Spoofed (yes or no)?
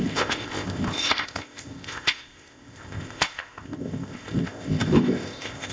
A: yes